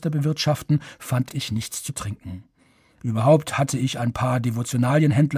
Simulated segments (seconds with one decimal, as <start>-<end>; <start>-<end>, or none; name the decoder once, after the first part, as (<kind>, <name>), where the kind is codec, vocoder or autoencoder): 1.3-1.9 (codec, SNAC); 2.5-3.2